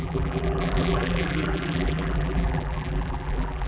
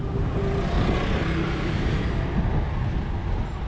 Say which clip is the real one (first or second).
second